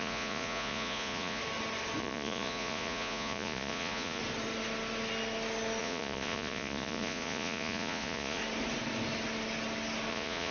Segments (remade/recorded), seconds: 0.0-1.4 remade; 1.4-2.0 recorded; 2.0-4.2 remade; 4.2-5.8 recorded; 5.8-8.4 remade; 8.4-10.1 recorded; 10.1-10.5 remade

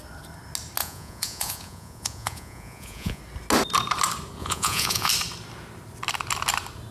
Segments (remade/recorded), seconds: 0.0-0.8 recorded; 0.8-3.2 remade; 3.2-4.4 recorded; 4.4-5.1 remade; 5.1-6.9 recorded

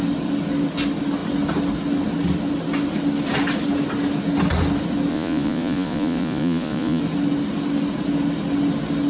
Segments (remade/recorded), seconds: 0.0-5.1 recorded; 5.1-7.0 remade; 7.0-9.1 recorded